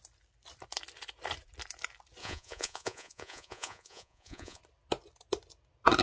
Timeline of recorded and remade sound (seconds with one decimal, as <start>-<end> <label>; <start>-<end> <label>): 0.0-2.2 recorded; 2.2-4.6 remade; 4.6-6.0 recorded